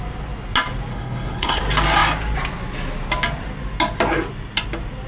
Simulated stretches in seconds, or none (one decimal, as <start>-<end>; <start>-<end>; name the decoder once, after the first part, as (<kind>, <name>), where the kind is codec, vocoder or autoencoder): 0.9-1.6 (codec, HILCodec)